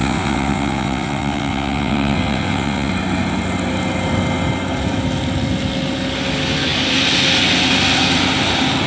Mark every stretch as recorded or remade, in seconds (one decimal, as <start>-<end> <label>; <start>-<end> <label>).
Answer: 0.0-2.9 remade; 2.9-8.9 recorded